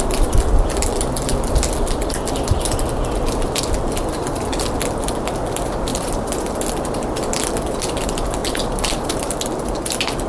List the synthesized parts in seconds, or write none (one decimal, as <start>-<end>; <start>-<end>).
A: 5.9-6.7